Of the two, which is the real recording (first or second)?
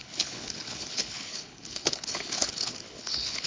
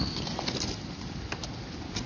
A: second